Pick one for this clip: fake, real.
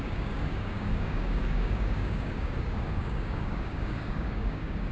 fake